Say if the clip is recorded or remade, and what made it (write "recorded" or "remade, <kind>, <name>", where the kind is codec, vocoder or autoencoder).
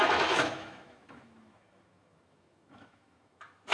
remade, autoencoder, DAC-VAE